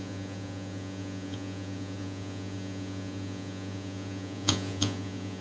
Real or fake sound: fake